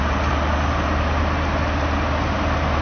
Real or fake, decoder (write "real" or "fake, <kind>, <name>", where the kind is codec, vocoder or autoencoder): real